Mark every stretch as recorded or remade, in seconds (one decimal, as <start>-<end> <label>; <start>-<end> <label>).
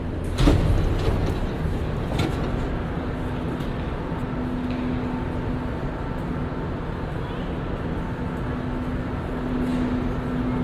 0.0-10.6 recorded